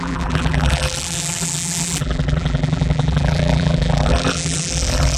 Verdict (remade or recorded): remade